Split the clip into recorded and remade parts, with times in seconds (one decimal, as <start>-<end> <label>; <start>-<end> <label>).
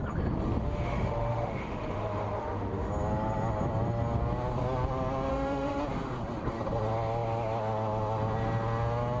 0.0-0.6 recorded; 0.6-2.9 remade; 2.9-5.3 recorded; 5.3-5.8 remade; 5.8-9.2 recorded